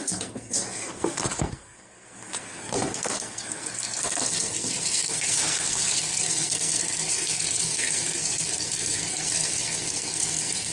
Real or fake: fake